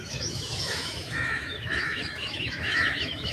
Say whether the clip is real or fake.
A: fake